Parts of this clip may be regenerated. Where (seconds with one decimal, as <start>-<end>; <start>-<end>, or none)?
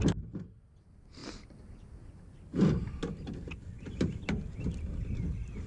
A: none